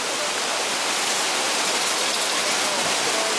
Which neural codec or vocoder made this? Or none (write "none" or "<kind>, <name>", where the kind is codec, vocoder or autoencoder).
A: none